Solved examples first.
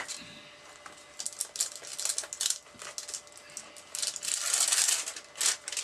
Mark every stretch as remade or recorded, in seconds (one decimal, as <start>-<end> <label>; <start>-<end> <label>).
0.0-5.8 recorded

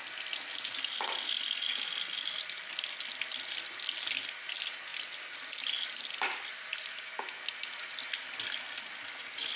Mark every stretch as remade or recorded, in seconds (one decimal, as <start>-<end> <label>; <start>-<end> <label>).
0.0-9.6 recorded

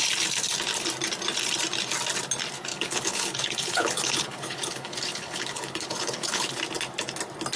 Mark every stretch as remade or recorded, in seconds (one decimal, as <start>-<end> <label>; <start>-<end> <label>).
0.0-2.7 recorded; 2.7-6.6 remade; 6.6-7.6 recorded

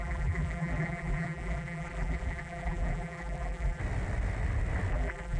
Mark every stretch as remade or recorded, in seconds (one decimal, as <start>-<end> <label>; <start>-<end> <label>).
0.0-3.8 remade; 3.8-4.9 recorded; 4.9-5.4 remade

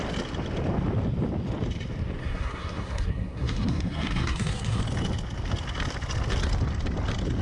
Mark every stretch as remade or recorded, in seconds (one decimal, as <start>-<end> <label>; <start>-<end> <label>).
0.0-2.2 recorded; 2.2-4.8 remade; 4.8-7.4 recorded

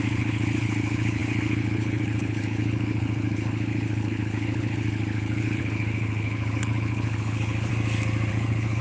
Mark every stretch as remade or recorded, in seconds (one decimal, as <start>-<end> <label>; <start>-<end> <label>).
0.0-7.7 remade; 7.7-8.3 recorded; 8.3-8.8 remade

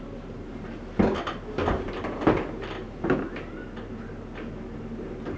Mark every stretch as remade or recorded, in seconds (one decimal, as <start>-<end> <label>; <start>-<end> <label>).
0.0-5.4 recorded

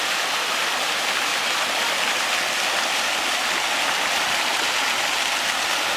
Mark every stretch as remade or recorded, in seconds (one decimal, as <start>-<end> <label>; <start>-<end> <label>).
0.0-6.0 recorded